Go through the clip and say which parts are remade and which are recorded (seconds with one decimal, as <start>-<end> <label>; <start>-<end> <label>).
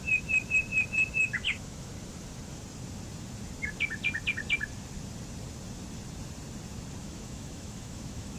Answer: 0.0-1.2 recorded; 1.2-1.9 remade; 1.9-7.0 recorded; 7.0-8.4 remade